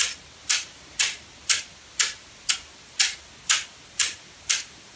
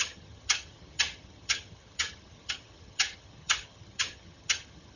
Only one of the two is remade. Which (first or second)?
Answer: second